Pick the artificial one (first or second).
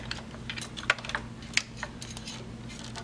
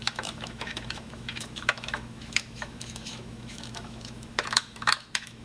second